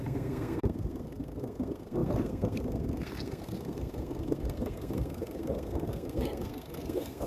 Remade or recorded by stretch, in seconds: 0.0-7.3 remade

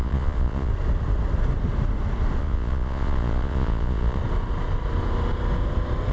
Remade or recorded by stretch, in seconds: 0.0-0.7 remade; 0.7-2.4 recorded; 2.4-4.2 remade; 4.2-6.1 recorded

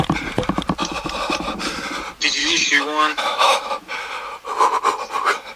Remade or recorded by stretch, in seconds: 0.0-2.4 recorded; 2.4-3.7 remade; 3.7-5.6 recorded

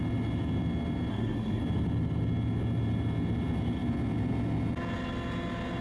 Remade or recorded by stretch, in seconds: 0.0-1.1 recorded; 1.1-1.6 remade; 1.6-5.8 recorded

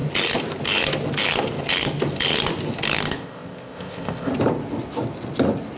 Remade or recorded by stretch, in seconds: 0.0-3.2 recorded; 3.2-4.3 remade; 4.3-5.8 recorded

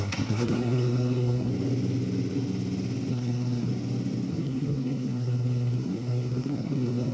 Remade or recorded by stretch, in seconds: 0.0-1.5 remade; 1.5-3.1 recorded; 3.1-3.7 remade; 3.7-4.3 recorded; 4.3-7.1 remade

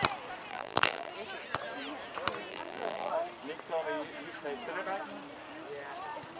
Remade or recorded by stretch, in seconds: 0.0-0.5 recorded; 0.5-1.1 remade; 1.1-2.5 recorded; 2.5-3.1 remade; 3.1-6.4 recorded